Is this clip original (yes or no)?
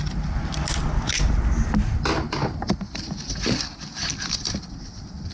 yes